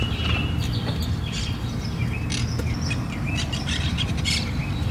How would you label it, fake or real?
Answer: real